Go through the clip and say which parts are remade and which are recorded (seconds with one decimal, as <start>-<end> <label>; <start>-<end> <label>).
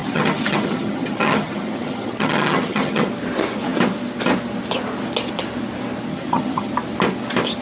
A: 0.0-3.1 remade; 3.1-6.1 recorded; 6.1-6.7 remade; 6.7-7.6 recorded